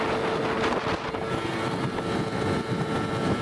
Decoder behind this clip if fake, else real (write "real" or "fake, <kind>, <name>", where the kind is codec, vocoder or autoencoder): real